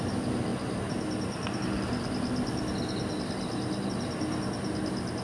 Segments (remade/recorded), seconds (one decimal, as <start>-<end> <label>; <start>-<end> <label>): 0.0-5.2 recorded

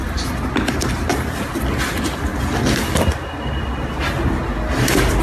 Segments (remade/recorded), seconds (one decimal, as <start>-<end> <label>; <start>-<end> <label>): 0.0-1.1 recorded; 1.1-2.3 remade; 2.3-4.1 recorded; 4.1-5.2 remade

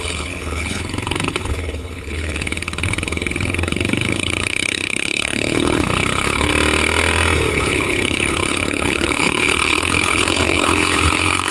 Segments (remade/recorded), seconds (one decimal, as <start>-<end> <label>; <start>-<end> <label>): 0.0-6.5 remade; 6.5-7.5 recorded; 7.5-11.5 remade

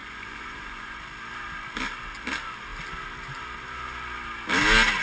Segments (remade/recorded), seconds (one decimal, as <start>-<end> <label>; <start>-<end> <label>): 0.0-1.0 remade; 1.0-5.0 recorded

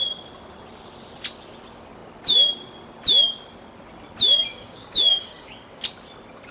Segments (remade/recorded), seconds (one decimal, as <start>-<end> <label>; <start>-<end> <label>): 0.0-4.5 recorded; 4.5-5.8 remade; 5.8-6.5 recorded

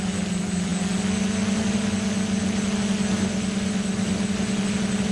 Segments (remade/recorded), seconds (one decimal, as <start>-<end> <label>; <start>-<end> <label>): 0.0-5.1 recorded